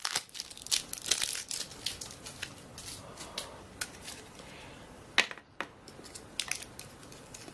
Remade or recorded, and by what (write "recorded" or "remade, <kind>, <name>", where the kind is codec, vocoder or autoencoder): recorded